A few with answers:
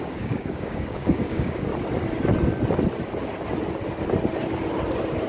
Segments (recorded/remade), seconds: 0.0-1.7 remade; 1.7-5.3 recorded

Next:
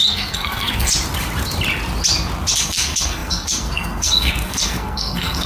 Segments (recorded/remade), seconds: 0.0-0.9 remade; 0.9-2.6 recorded; 2.6-5.5 remade

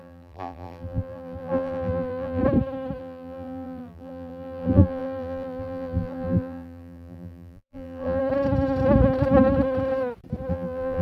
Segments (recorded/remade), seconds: 0.0-2.4 remade; 2.4-3.0 recorded; 3.0-8.2 remade; 8.2-10.5 recorded; 10.5-11.0 remade